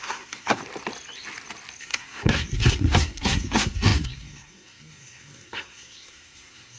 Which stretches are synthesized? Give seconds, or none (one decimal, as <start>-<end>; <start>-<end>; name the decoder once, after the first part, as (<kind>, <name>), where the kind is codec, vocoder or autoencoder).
0.0-0.6 (codec, SNAC); 1.8-6.8